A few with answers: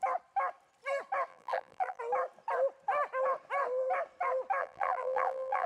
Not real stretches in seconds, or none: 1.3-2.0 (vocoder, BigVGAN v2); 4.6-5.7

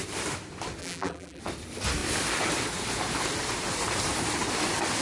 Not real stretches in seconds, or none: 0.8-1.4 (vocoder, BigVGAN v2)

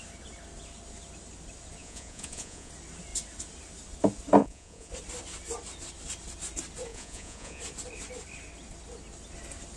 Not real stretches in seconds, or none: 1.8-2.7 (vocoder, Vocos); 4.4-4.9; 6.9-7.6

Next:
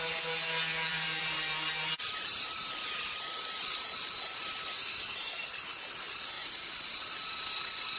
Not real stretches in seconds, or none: 0.9-5.4 (vocoder, BigVGAN v2); 6.4-7.1